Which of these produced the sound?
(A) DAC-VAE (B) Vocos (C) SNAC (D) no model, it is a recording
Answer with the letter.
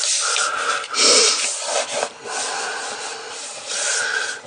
D